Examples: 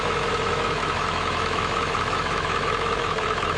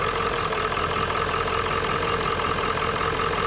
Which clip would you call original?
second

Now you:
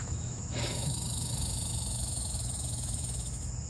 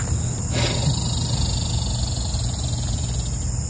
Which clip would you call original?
second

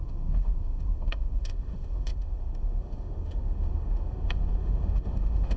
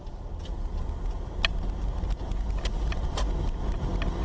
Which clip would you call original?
second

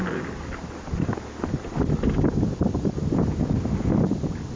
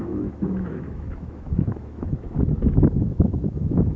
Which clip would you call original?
first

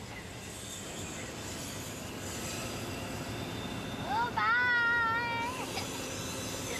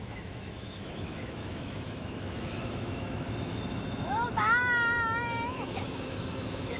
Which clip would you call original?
first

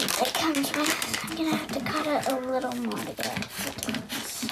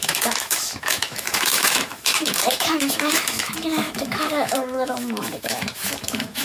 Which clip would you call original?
first